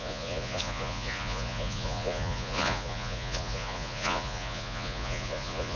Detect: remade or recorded remade